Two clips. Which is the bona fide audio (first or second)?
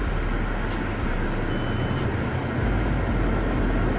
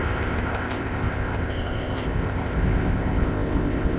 first